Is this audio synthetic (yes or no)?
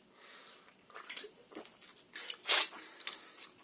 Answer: no